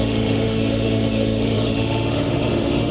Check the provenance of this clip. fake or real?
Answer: fake